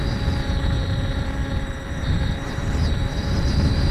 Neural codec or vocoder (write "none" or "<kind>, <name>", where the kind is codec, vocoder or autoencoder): vocoder, BigVGAN v2